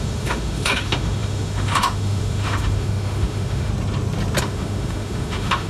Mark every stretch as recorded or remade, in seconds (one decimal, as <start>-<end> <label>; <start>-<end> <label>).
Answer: 0.0-3.7 remade; 3.7-4.4 recorded; 4.4-5.7 remade